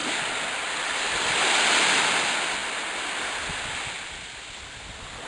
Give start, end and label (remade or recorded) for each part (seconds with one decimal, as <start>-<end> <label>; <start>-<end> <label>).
0.0-5.3 recorded